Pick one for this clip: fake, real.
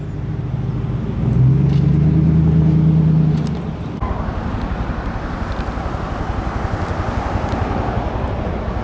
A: real